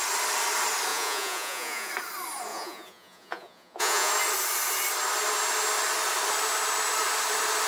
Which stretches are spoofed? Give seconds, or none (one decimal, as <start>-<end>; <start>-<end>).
0.9-1.9; 2.5-4.1